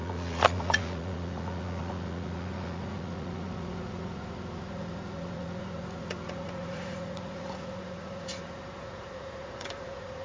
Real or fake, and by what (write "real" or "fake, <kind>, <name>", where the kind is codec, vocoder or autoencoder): fake, vocoder, Vocos